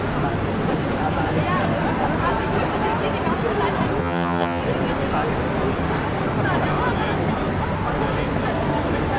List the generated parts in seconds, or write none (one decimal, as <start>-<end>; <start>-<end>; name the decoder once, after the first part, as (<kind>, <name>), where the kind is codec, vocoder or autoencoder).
4.0-4.6 (vocoder, HiFi-GAN)